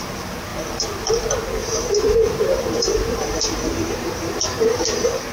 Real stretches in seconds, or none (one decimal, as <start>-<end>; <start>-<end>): 0.0-1.6; 4.8-5.3